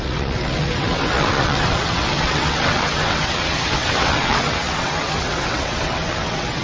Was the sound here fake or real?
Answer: fake